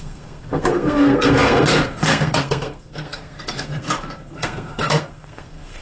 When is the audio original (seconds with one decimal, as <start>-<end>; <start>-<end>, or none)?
none